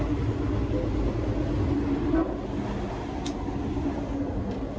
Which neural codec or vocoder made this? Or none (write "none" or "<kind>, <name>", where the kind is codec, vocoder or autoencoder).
none